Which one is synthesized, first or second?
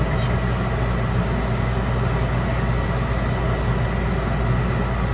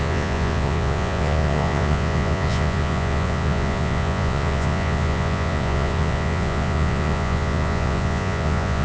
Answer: second